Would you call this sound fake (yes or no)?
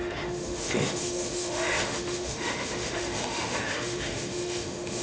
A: yes